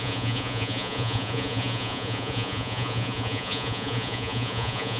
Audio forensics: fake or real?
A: fake